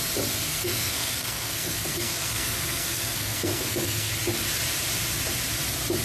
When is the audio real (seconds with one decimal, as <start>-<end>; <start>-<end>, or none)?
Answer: 0.0-0.5; 4.1-6.0

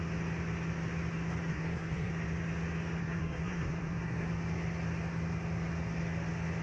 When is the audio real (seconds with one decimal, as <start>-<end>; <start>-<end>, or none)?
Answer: 0.0-1.5; 2.1-3.0; 4.3-6.6

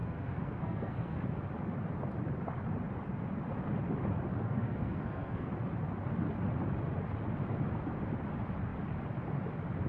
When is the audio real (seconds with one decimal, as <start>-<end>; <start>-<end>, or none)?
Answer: 1.2-4.3; 5.5-9.9

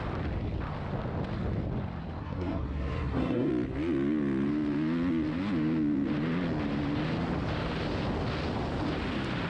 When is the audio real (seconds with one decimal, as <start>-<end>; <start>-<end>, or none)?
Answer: 0.0-2.2; 3.5-9.5

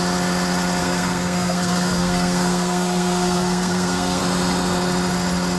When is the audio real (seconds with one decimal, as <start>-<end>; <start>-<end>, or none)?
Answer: 0.0-0.8; 4.2-5.6

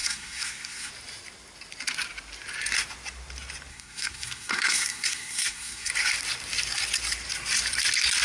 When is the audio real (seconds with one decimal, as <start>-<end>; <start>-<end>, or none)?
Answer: 0.9-3.7; 5.9-8.2

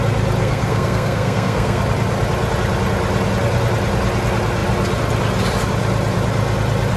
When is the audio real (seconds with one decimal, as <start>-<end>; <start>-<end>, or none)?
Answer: 0.0-0.4; 1.8-7.0

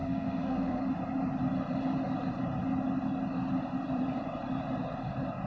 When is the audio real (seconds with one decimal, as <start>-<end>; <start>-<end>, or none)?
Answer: 0.8-5.5